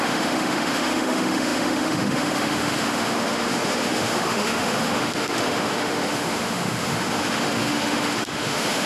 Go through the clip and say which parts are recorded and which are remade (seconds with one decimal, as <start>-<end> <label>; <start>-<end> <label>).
0.0-8.9 remade